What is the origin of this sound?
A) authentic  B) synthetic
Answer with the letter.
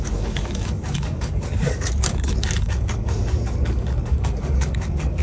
B